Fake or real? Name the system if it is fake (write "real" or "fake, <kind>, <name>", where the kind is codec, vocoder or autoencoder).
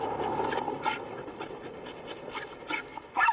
real